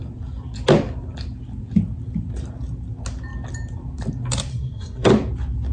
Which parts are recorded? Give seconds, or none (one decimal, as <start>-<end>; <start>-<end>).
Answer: 0.0-4.5; 5.1-5.7